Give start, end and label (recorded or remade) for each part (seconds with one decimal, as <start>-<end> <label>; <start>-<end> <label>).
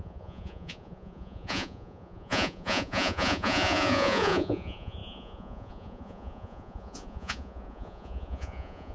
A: 0.0-8.9 remade